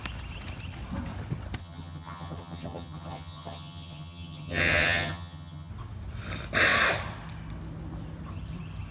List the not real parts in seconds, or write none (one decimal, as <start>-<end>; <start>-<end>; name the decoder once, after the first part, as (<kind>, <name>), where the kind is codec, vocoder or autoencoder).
1.6-5.7 (vocoder, HiFi-GAN)